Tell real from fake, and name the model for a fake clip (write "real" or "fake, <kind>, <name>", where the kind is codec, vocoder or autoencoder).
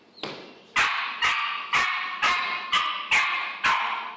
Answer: real